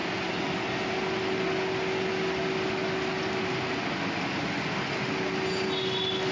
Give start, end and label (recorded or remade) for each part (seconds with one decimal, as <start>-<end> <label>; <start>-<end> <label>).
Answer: 0.0-6.3 recorded